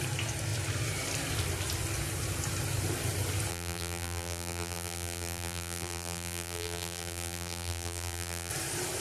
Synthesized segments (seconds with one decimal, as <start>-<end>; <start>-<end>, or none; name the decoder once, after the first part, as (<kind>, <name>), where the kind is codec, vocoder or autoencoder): 3.5-8.5 (vocoder, BigVGAN v2)